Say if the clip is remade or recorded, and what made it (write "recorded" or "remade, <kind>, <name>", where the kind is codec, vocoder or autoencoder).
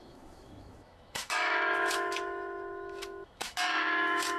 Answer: remade, autoencoder, DAC-VAE